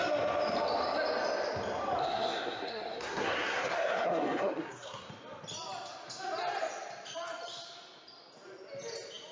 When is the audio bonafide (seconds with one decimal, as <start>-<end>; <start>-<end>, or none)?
0.0-2.0; 5.1-9.3